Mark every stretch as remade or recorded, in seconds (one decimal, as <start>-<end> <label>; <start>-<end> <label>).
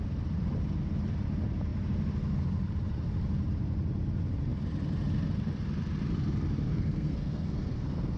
0.0-6.7 recorded; 6.7-8.2 remade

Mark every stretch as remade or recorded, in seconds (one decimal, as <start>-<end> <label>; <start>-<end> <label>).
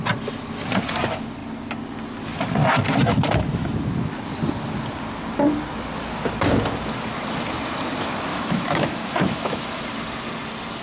0.0-8.3 recorded; 8.3-9.8 remade; 9.8-10.8 recorded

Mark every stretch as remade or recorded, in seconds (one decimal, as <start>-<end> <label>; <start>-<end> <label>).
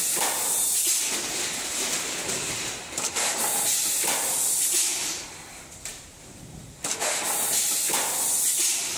0.0-9.0 remade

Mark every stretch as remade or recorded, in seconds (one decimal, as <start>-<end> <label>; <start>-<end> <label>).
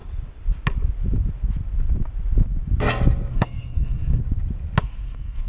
0.0-3.3 recorded; 3.3-4.2 remade; 4.2-4.8 recorded; 4.8-5.5 remade